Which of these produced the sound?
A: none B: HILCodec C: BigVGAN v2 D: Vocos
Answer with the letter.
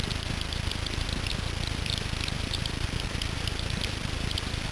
A